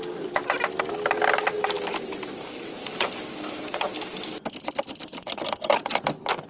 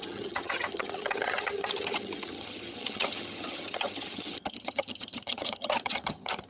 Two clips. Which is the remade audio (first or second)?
second